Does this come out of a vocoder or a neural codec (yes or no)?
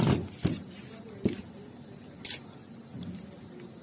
no